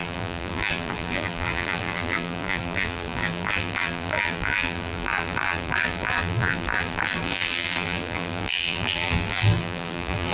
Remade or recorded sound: remade